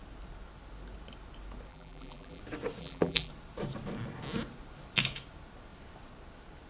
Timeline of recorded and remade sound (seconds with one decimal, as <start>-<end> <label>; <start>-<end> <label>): 0.0-1.7 recorded; 1.7-2.4 remade; 2.4-2.8 recorded; 2.8-3.3 remade; 3.3-6.7 recorded